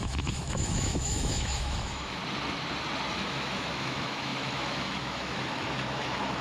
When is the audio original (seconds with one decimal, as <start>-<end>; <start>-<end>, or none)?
2.2-3.1